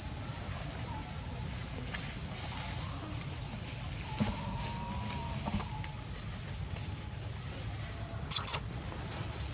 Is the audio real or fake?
real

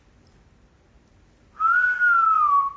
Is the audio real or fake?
real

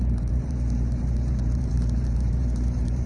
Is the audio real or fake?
fake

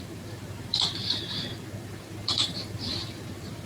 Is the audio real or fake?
fake